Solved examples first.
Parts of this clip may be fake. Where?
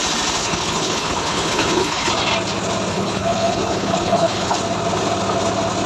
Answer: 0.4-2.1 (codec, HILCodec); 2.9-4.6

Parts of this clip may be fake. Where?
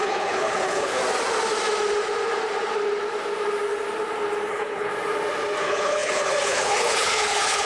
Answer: 0.0-1.0 (codec, HILCodec); 4.5-4.9; 5.6-7.7